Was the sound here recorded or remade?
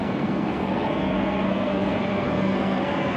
remade